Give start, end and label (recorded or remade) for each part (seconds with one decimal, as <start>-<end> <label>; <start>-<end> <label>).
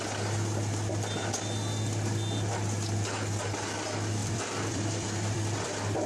0.0-4.2 recorded; 4.2-6.1 remade